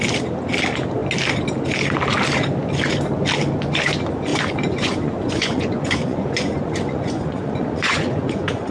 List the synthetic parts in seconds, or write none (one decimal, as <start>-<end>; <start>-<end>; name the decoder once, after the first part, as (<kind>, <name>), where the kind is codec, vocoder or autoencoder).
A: 4.3-8.7 (vocoder, Vocos)